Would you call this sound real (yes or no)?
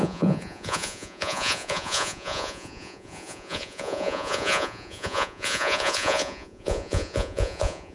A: no